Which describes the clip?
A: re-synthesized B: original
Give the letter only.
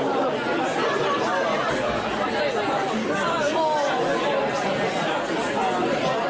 B